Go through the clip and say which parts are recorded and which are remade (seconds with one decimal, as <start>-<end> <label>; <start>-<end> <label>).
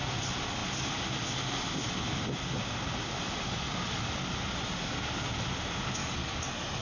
0.0-6.0 recorded; 6.0-6.8 remade